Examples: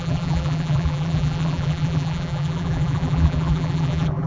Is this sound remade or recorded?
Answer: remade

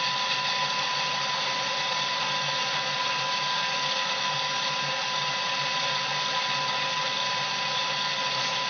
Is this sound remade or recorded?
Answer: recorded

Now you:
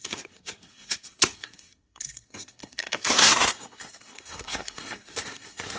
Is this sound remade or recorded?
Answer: remade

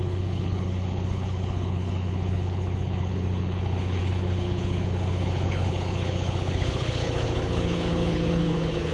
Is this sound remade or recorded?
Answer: remade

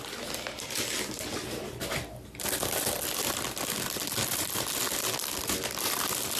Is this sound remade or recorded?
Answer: recorded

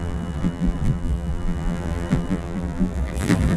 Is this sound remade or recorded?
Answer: remade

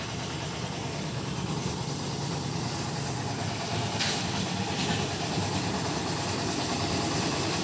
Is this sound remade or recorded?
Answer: remade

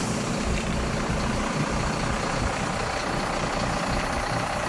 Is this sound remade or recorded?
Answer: remade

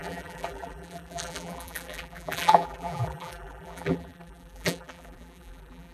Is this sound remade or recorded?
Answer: remade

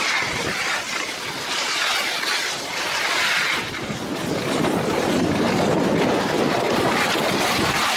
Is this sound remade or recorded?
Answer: remade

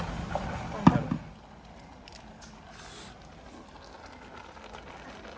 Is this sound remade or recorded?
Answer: recorded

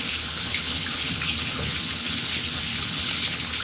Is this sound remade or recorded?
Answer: remade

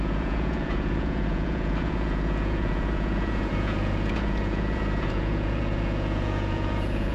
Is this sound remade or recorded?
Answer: remade